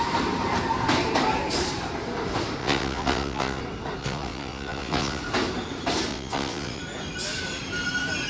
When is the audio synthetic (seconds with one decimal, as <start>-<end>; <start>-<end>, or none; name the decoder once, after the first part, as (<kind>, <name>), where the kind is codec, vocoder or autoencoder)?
2.6-3.6 (vocoder, WaveNeXt); 4.0-5.2; 6.1-6.8